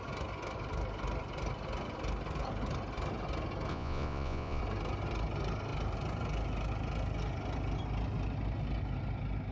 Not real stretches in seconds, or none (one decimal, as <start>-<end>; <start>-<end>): 3.7-4.6